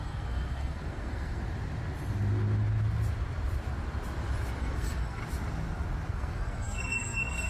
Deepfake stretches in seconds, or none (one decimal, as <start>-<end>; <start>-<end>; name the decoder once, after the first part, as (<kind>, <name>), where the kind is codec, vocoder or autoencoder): 0.0-1.4 (codec, SNAC); 4.6-5.2; 6.1-7.5